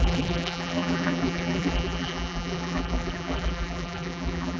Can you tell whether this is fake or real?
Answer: fake